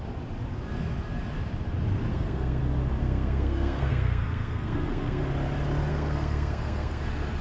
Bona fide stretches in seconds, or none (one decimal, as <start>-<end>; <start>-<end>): 0.0-2.1; 2.6-3.0; 5.2-5.9; 7.0-7.4